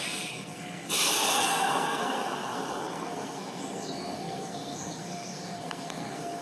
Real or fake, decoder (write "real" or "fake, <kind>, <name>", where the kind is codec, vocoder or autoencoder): fake, codec, SNAC